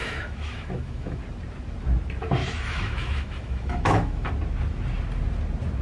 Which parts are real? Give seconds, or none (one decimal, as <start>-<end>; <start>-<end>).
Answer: 1.2-2.4; 4.3-5.8

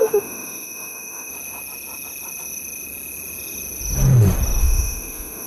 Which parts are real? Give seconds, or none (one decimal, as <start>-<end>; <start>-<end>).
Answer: 1.3-4.6